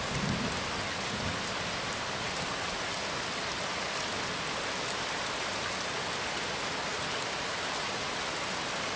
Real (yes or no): yes